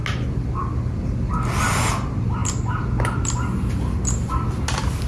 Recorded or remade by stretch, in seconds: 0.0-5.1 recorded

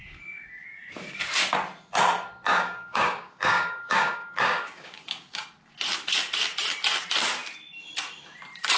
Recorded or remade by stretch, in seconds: 0.0-2.5 recorded; 2.5-5.4 remade; 5.4-8.8 recorded